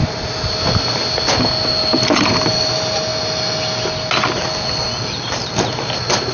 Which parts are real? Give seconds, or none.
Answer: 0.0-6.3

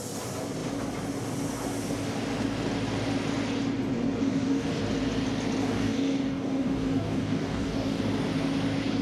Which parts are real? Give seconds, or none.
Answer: 0.0-4.2; 4.8-5.6; 8.0-9.0

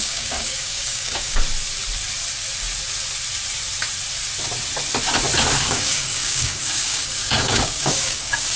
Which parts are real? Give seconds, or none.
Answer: 1.4-5.6

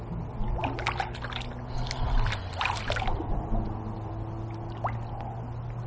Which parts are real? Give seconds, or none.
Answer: 0.0-5.9